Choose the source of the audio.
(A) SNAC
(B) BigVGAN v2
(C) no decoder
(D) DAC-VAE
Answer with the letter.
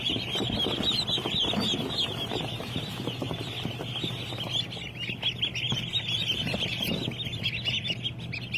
C